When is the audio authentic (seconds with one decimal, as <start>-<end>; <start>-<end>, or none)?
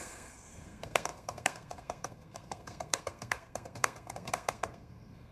none